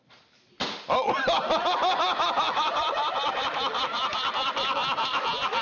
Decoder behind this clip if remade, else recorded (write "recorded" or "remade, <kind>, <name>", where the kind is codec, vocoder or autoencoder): recorded